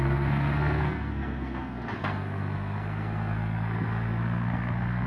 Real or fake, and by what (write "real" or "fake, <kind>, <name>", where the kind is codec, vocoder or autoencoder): fake, codec, SNAC